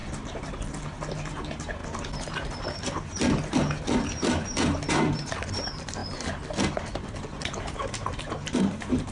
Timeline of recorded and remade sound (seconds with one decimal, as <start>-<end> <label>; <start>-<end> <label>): 0.0-1.1 recorded; 1.1-1.8 remade; 1.8-4.9 recorded; 4.9-6.0 remade; 6.0-7.6 recorded; 7.6-9.1 remade